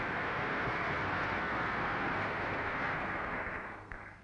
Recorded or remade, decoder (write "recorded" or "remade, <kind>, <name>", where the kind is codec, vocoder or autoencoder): remade, codec, SNAC